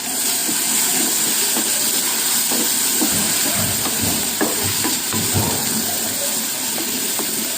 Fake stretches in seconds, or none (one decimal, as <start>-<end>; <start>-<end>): 0.0-0.4; 2.8-5.6; 6.7-7.6